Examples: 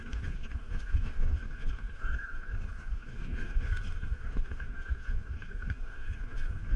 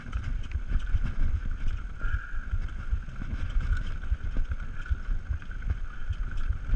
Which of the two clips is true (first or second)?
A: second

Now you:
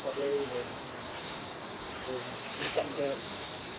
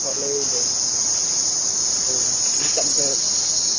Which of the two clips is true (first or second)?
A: second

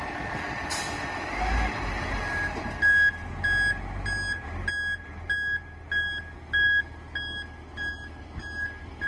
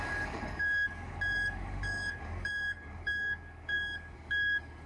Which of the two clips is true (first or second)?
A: first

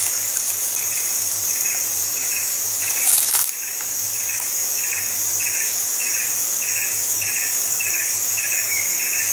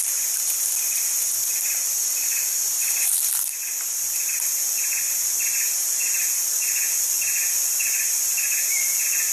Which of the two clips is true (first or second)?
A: second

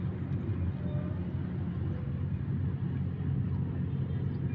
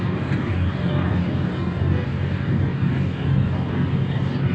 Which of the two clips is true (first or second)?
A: first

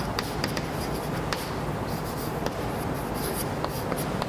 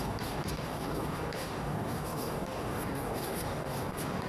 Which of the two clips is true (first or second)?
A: first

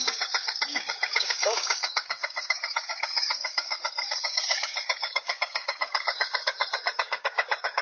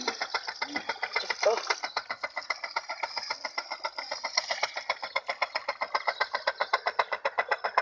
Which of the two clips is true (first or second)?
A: second